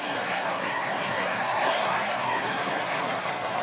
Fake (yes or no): yes